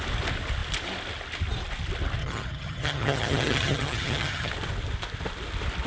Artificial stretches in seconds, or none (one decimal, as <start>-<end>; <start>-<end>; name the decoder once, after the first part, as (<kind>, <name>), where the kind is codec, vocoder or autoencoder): 2.2-4.5 (vocoder, HiFi-GAN)